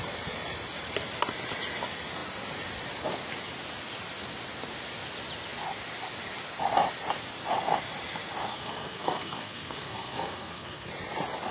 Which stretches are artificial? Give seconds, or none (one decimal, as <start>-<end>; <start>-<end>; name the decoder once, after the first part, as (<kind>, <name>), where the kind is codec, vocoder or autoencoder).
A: 8.5-10.9 (codec, SNAC)